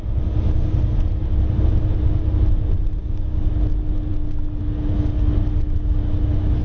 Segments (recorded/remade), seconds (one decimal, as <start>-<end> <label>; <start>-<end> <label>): 0.0-3.0 recorded; 3.0-3.5 remade; 3.5-6.6 recorded

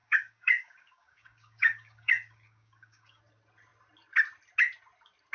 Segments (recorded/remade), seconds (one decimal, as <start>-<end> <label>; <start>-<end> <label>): 0.0-3.2 remade; 3.2-5.3 recorded

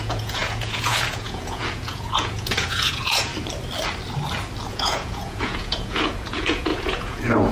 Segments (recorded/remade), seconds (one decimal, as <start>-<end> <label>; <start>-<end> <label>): 0.0-3.3 remade; 3.3-4.7 recorded; 4.7-7.5 remade

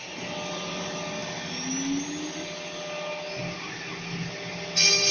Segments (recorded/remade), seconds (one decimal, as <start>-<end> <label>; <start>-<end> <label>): 0.0-5.1 recorded

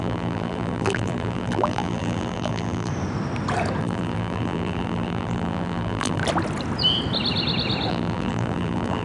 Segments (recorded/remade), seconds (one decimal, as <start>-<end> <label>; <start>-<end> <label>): 0.0-2.9 remade; 2.9-3.8 recorded; 3.8-6.2 remade; 6.2-7.9 recorded; 7.9-9.0 remade

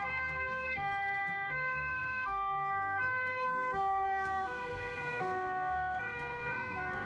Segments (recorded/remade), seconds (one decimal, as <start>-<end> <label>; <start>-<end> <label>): 0.0-7.1 remade

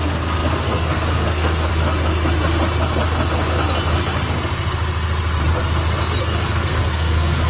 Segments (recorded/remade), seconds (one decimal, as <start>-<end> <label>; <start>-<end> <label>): 0.0-1.7 remade; 1.7-6.2 recorded; 6.2-7.5 remade

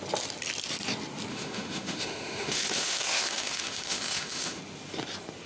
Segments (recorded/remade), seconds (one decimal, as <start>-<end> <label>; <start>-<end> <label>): 0.0-1.3 recorded; 1.3-4.6 remade; 4.6-5.5 recorded